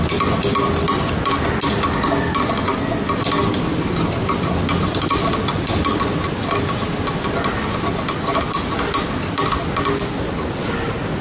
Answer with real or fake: real